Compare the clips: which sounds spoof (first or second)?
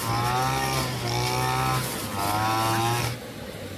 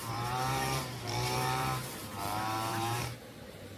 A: second